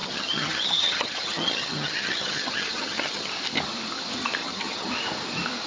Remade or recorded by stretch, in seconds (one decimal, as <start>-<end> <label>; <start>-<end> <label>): 0.0-3.3 remade; 3.3-4.4 recorded; 4.4-4.9 remade; 4.9-5.7 recorded